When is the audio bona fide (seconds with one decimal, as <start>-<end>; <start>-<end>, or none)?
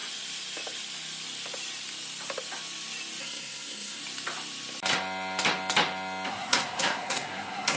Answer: 0.0-3.2; 4.0-6.3